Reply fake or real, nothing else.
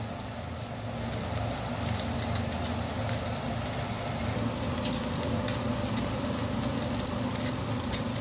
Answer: real